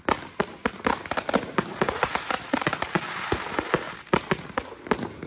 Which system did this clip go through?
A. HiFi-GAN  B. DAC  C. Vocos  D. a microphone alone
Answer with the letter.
D